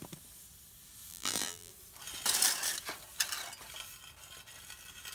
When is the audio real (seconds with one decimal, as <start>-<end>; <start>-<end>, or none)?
0.0-1.1; 1.7-5.1